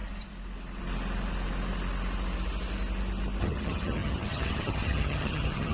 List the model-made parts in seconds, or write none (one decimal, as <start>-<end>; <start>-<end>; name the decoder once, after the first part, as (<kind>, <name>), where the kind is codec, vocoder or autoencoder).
3.4-5.7 (vocoder, HiFi-GAN)